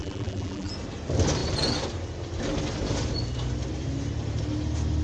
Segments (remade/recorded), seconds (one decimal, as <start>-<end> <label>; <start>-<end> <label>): 0.0-0.7 remade; 0.7-5.0 recorded